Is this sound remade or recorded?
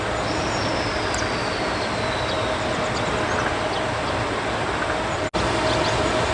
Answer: recorded